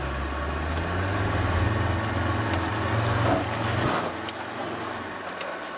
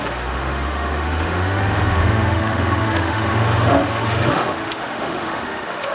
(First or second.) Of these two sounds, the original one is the first